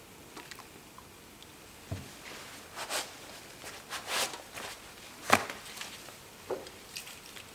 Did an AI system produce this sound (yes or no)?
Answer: yes